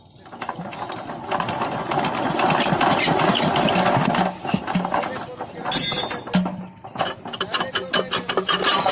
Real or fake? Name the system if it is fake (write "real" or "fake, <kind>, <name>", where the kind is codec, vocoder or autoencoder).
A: real